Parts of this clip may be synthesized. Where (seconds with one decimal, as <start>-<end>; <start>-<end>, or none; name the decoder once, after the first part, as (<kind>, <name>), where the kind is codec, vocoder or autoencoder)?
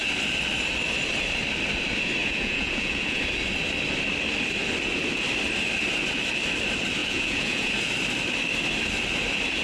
2.2-3.2 (vocoder, Vocos); 7.0-7.7